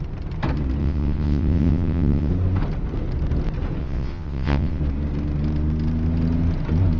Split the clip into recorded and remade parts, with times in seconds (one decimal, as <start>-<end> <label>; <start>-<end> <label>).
0.0-0.8 recorded; 0.8-2.3 remade; 2.3-3.8 recorded; 3.8-4.8 remade; 4.8-7.0 recorded